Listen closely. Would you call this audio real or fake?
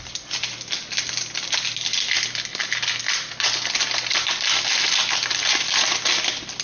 real